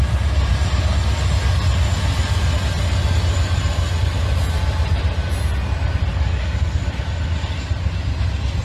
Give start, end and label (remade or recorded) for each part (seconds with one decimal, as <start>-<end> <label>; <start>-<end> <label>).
0.0-6.1 recorded; 6.1-6.8 remade; 6.8-8.6 recorded